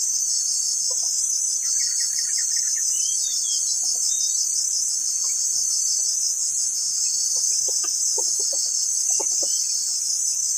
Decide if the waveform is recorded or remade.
recorded